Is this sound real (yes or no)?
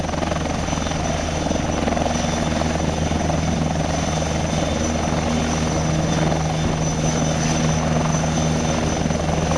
yes